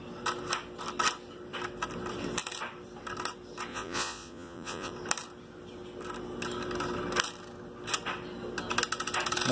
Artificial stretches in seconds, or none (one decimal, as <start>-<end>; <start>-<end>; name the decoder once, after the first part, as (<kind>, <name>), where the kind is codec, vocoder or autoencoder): 3.7-4.9 (vocoder, Vocos)